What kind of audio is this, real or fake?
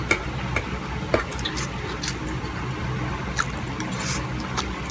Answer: real